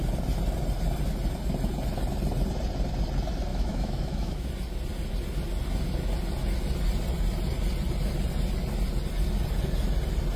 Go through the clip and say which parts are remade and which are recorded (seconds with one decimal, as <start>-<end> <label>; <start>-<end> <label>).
0.0-3.5 recorded; 3.5-4.5 remade; 4.5-10.4 recorded